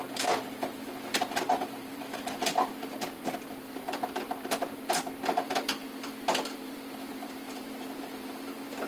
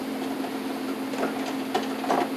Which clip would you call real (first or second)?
second